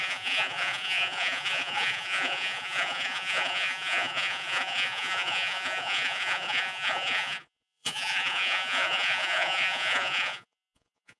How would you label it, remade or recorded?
remade